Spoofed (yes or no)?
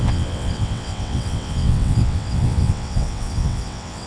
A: yes